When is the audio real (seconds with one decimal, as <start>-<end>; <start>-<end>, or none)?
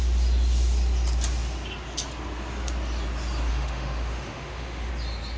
0.0-3.5; 4.9-5.4